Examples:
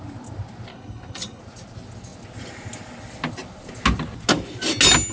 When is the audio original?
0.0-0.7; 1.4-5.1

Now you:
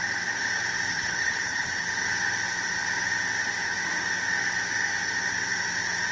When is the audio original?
0.0-0.9; 1.9-6.1

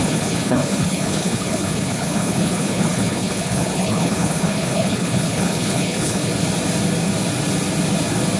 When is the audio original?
6.3-8.4

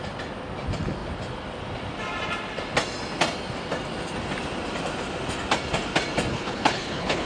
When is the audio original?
0.0-6.3

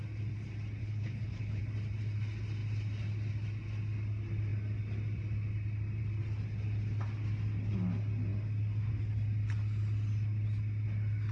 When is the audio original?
0.0-0.8; 1.6-11.3

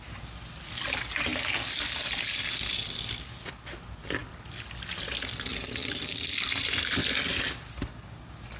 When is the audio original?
0.0-8.6

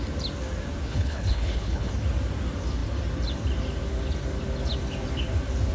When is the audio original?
0.0-0.9; 1.9-5.7